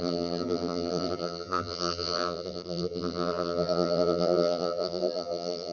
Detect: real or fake fake